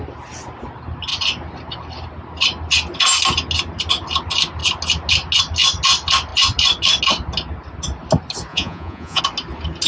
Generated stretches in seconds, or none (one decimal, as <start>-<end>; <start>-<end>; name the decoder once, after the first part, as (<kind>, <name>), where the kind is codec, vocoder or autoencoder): 8.5-9.2 (vocoder, Vocos)